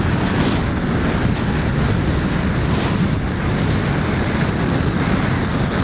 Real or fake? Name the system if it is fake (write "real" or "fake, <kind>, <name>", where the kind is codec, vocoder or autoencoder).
real